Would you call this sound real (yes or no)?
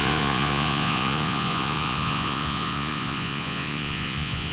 no